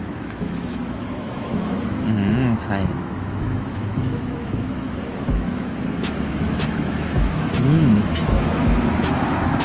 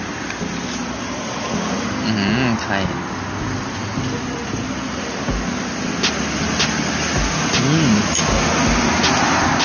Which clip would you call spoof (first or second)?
first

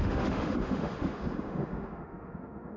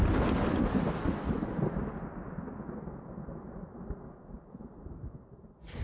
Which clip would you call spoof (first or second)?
first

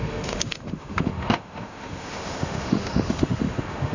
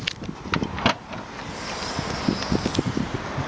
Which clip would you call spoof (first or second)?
first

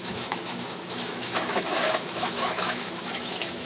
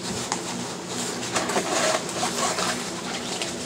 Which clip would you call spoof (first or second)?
first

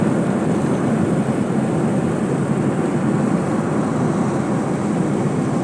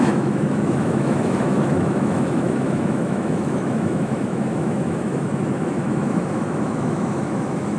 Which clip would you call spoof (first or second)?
second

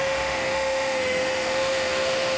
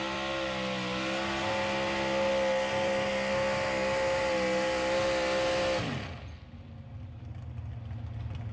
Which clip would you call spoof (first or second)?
first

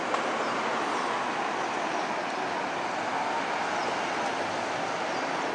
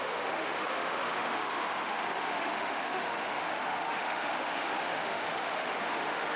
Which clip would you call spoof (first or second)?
second